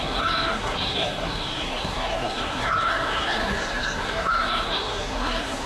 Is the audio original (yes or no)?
no